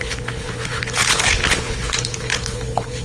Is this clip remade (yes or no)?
yes